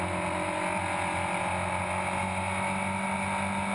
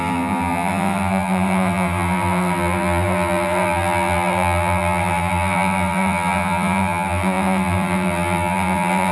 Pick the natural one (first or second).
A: first